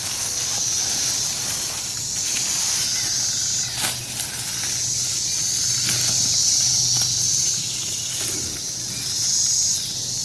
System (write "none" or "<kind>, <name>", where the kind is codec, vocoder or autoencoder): none